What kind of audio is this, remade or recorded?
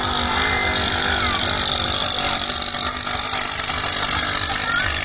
recorded